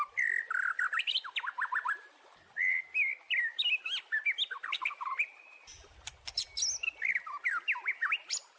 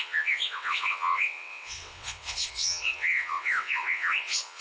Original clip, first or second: first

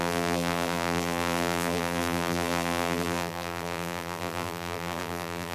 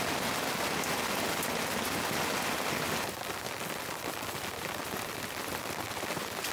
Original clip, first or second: second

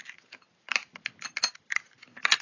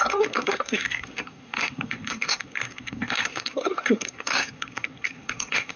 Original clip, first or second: first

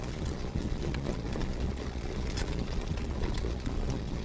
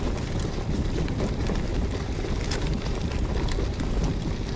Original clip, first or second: second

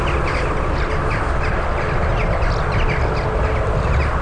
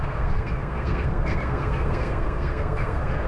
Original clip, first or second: first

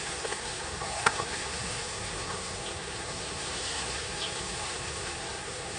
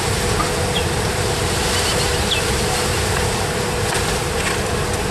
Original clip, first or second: second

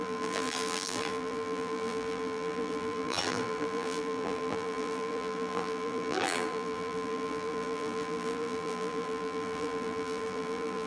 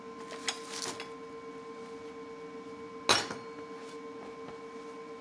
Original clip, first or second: second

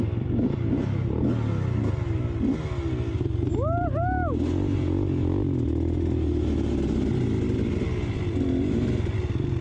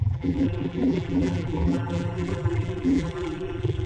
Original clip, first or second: first